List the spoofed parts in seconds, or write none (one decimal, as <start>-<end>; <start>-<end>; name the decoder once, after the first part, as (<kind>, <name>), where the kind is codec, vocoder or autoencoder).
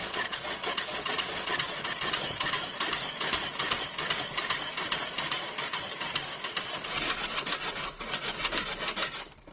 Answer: 0.0-1.8 (vocoder, Vocos)